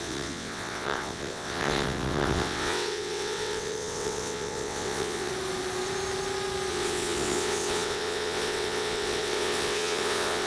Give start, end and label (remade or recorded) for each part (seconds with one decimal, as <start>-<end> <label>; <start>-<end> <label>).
0.0-5.3 remade; 5.3-6.7 recorded; 6.7-10.5 remade